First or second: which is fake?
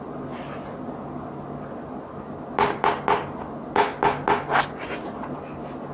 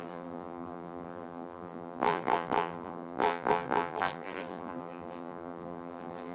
second